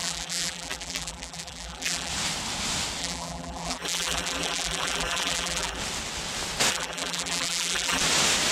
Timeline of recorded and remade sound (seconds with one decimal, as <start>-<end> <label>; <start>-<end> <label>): 0.0-2.1 remade; 2.1-3.0 recorded; 3.0-5.8 remade; 5.8-6.7 recorded; 6.7-8.0 remade; 8.0-8.5 recorded